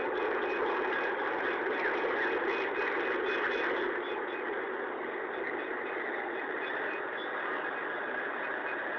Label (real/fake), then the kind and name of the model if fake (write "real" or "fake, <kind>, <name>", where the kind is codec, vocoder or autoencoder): real